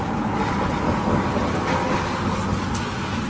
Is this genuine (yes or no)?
yes